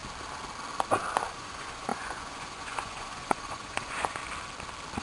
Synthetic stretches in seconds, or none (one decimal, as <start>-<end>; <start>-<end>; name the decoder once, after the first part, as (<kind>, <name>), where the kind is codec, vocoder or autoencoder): 1.3-4.2 (vocoder, Vocos)